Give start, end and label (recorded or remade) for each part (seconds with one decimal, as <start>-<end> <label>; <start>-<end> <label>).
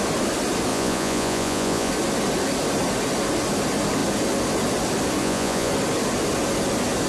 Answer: 0.0-0.7 recorded; 0.7-1.9 remade; 1.9-5.2 recorded; 5.2-5.7 remade; 5.7-7.1 recorded